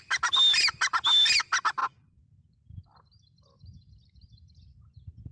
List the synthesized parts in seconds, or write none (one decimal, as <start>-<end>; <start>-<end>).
none